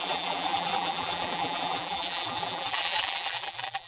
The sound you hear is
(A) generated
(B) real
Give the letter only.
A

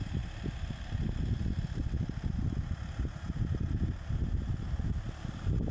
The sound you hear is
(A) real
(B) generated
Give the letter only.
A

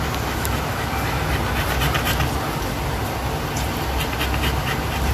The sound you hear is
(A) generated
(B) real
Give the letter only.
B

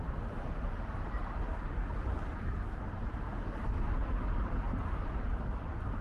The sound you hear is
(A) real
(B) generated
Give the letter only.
B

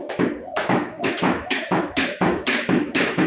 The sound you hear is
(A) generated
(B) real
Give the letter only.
A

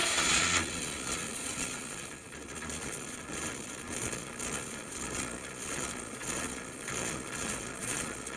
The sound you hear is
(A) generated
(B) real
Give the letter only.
A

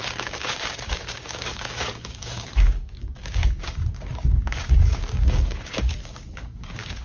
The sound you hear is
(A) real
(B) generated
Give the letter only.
B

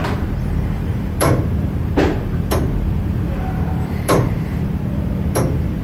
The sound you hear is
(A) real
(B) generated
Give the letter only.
B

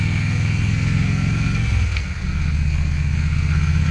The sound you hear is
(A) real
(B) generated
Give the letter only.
B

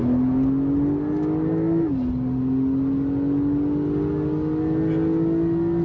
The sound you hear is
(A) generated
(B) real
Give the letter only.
B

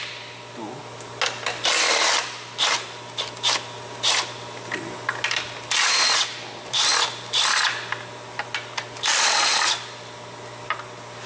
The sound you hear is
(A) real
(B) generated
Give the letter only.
A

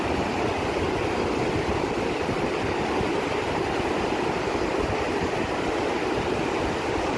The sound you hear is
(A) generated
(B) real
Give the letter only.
B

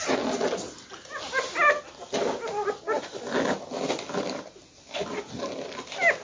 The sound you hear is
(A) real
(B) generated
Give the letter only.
A